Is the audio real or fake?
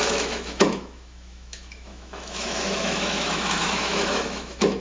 fake